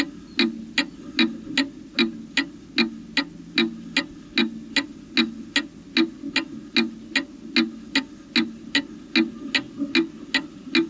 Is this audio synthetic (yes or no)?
no